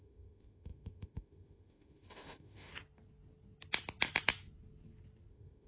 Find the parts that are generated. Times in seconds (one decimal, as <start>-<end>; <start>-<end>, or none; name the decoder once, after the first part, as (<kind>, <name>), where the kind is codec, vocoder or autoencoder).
0.0-2.7 (autoencoder, DAC-VAE); 5.3-5.7